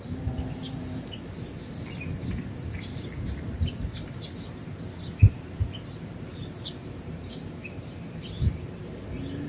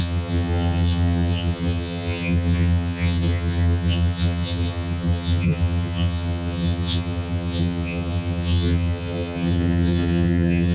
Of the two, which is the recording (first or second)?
first